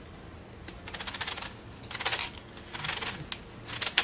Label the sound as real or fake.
real